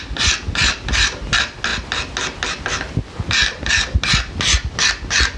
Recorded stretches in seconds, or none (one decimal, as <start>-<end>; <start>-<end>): 0.0-5.4